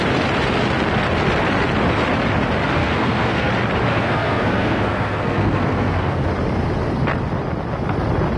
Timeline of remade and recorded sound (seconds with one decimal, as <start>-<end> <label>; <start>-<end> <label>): 0.0-2.8 recorded; 2.8-3.5 remade; 3.5-3.9 recorded; 3.9-6.3 remade; 6.3-8.4 recorded